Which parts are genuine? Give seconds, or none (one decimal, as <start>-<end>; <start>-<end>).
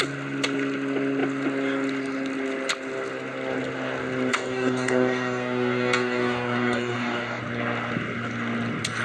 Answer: 0.0-4.3; 7.4-9.0